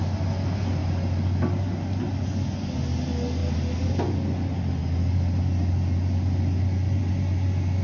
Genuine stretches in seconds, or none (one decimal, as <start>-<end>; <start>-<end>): 0.0-7.8